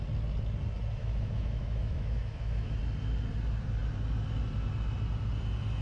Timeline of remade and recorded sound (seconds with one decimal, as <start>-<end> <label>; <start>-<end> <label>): 0.0-1.0 recorded; 1.0-2.8 remade; 2.8-5.8 recorded